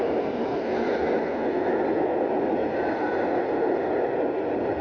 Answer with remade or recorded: recorded